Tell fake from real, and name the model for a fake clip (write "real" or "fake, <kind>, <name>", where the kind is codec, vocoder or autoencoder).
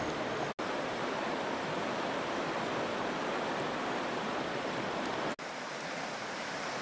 real